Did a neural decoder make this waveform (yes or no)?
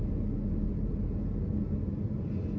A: no